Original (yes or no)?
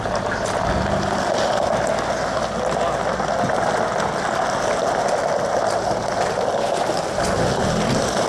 yes